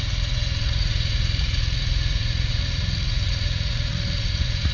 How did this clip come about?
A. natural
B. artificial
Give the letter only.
B